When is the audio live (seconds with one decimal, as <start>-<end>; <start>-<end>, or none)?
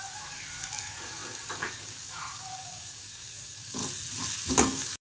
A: 3.8-4.5